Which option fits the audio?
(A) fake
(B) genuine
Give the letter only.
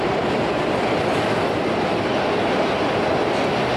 B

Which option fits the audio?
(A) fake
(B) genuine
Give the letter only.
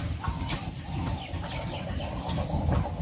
B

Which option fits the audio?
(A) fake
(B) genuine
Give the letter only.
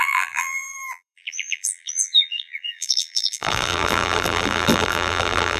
A